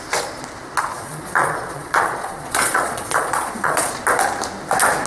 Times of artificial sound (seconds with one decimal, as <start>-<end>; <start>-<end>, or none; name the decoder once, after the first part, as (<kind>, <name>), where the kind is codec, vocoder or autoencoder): 0.8-3.9 (vocoder, Vocos)